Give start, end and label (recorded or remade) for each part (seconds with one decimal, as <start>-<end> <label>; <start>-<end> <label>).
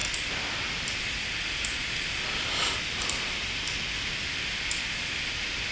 0.0-5.7 recorded